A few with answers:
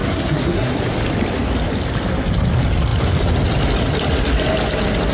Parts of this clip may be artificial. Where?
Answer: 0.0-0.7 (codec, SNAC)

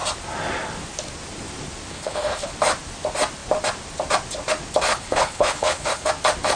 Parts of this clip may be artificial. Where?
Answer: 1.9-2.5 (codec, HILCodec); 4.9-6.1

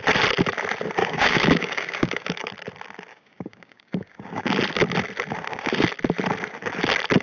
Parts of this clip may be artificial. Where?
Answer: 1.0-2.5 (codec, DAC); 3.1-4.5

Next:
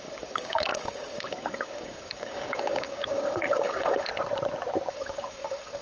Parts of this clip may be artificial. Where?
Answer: 0.0-4.1 (codec, DAC); 4.9-5.8

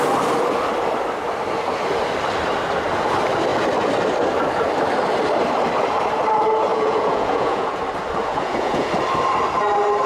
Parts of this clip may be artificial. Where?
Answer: 6.7-7.8 (vocoder, Vocos); 8.2-8.9

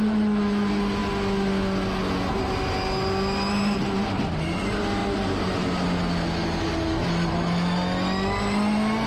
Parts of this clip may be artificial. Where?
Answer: none

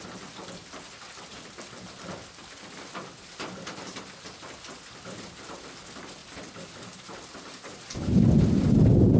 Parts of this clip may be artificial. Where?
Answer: none